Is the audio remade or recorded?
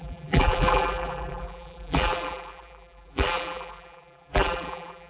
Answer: remade